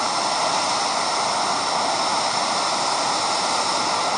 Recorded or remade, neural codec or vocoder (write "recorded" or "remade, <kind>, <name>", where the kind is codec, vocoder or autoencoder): recorded